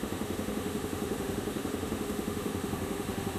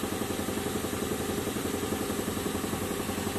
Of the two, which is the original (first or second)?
second